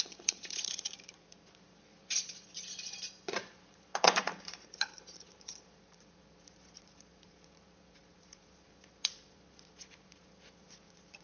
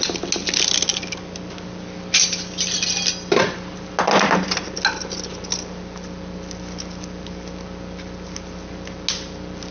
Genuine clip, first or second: second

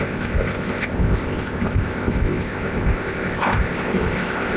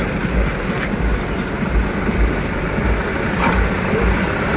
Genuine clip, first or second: second